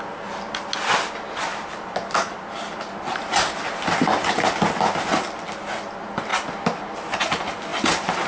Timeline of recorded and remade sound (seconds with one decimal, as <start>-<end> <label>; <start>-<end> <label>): 0.0-1.5 recorded; 1.5-2.4 remade; 2.4-6.3 recorded; 6.3-7.2 remade; 7.2-8.3 recorded